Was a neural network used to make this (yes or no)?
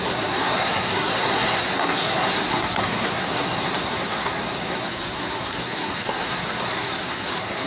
yes